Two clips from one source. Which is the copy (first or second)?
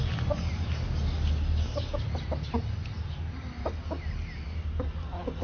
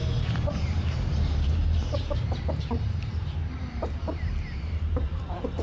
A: second